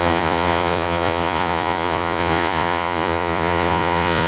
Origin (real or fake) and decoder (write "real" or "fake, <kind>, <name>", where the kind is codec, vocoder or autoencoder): fake, vocoder, Vocos